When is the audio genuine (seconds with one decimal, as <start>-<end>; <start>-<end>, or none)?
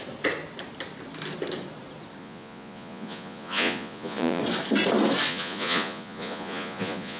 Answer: 0.0-2.2; 4.4-5.3